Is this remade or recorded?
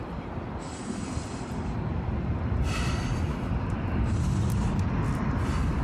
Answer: recorded